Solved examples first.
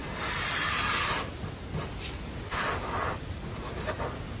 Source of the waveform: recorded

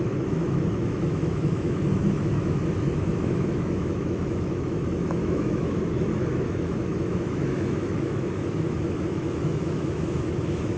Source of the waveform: remade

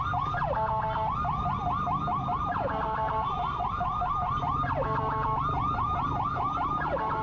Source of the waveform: recorded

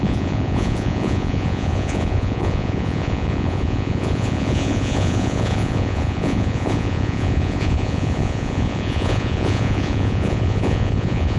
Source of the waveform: remade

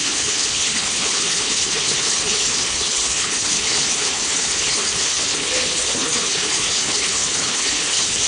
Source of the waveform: remade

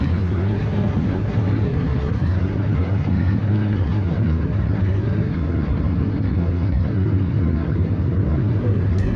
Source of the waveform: remade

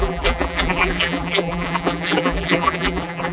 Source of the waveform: remade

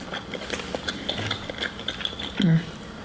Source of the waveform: recorded